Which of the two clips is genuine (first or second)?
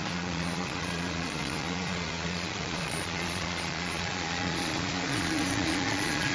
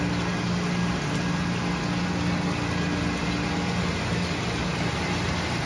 second